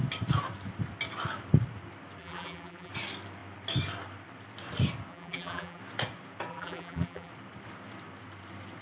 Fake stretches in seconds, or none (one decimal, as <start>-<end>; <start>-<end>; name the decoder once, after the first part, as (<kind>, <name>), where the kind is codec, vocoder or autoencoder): 2.2-2.9 (vocoder, BigVGAN v2); 5.1-5.8; 6.5-7.3